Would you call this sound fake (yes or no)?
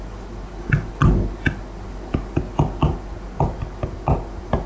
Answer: no